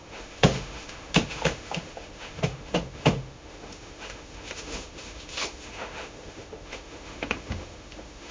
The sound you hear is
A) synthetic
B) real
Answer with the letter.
A